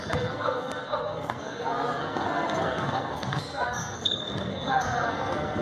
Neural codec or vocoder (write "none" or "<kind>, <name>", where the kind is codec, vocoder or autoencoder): codec, SNAC